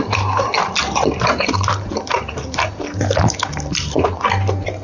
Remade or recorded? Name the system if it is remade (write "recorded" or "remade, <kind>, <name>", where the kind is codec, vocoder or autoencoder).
remade, vocoder, BigVGAN v2